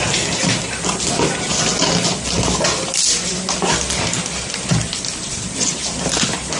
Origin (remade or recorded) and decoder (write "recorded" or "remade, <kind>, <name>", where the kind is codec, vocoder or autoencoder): recorded